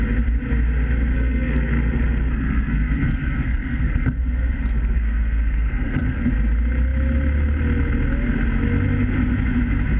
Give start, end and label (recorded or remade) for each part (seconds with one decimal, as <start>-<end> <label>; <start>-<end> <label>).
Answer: 0.0-1.1 recorded; 1.1-6.3 remade; 6.3-10.0 recorded